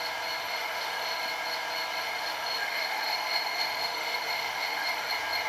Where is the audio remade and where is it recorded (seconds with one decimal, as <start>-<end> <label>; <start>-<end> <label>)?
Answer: 0.0-0.4 recorded; 0.4-1.2 remade; 1.2-2.0 recorded; 2.0-5.1 remade; 5.1-5.5 recorded